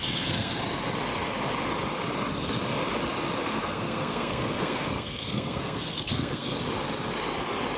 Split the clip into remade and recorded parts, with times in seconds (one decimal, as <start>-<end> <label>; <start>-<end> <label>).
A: 0.0-0.6 remade; 0.6-3.4 recorded; 3.4-6.6 remade; 6.6-7.8 recorded